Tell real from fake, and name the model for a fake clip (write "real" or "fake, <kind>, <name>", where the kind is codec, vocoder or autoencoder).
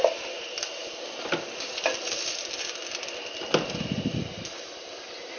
real